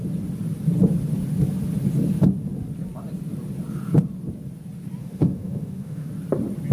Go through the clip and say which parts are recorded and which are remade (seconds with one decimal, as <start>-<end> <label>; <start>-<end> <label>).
0.0-5.0 recorded; 5.0-6.1 remade; 6.1-6.7 recorded